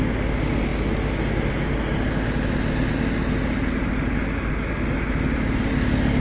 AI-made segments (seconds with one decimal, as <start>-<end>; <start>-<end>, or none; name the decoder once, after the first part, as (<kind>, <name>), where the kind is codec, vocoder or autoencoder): none